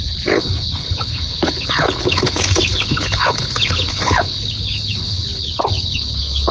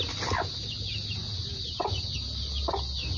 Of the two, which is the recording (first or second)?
second